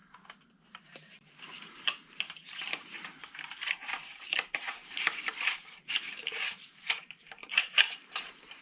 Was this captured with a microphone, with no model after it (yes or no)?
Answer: no